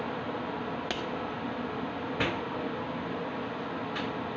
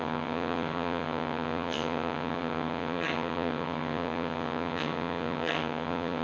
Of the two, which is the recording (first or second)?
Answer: first